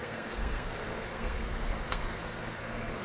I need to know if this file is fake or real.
fake